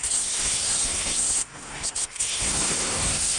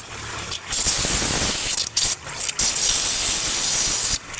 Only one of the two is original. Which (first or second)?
second